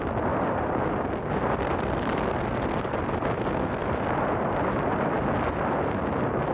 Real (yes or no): yes